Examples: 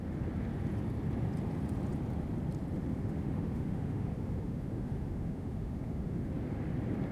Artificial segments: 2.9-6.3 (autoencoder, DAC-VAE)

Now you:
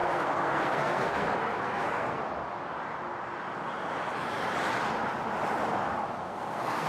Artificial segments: 0.0-2.2 (codec, SNAC); 6.2-6.9